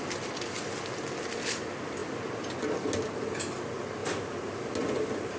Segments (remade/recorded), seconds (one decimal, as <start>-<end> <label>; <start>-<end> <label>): 0.0-4.0 recorded; 4.0-5.4 remade